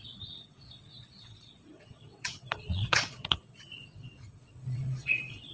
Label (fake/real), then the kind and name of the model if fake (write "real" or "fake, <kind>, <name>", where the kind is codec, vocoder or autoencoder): fake, vocoder, Vocos